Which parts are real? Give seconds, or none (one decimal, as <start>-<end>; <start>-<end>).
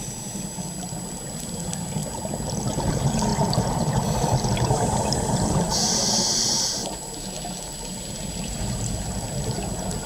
0.0-10.1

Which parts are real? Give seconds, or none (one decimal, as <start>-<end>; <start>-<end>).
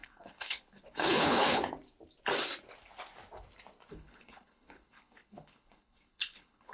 1.6-3.9